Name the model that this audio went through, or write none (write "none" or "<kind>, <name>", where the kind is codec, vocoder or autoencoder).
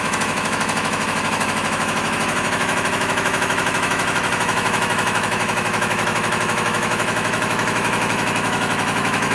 autoencoder, DAC-VAE